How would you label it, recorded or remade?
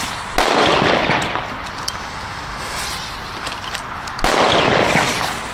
recorded